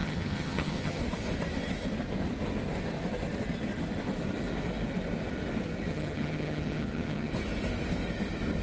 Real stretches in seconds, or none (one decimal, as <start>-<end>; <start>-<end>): 1.0-5.9; 7.3-8.6